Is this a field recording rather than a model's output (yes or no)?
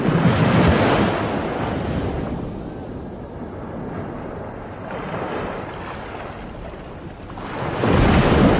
yes